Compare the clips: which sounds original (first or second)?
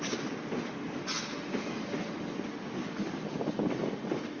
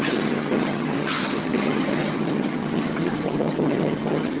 first